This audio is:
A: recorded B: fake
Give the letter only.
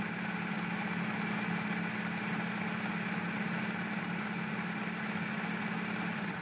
A